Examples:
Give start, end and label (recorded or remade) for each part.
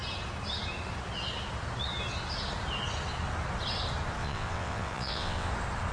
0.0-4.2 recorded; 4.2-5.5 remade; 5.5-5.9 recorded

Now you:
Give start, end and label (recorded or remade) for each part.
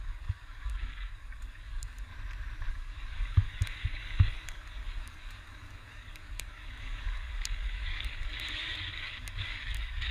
0.0-2.1 remade; 2.1-2.7 recorded; 2.7-10.1 remade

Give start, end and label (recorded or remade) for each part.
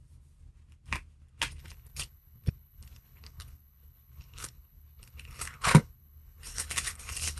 0.0-1.6 recorded; 1.6-7.4 remade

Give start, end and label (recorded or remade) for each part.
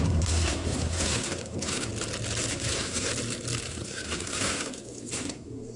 0.0-1.9 remade; 1.9-2.5 recorded; 2.5-3.1 remade; 3.1-3.7 recorded; 3.7-5.8 remade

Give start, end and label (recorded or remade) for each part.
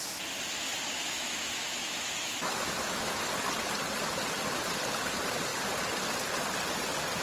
0.0-0.6 recorded; 0.6-3.2 remade; 3.2-7.2 recorded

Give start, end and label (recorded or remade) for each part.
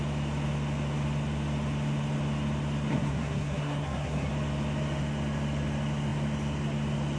0.0-2.9 recorded; 2.9-4.3 remade; 4.3-7.2 recorded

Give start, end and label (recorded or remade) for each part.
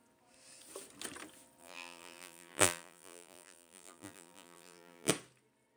0.0-1.6 recorded; 1.6-5.1 remade; 5.1-5.8 recorded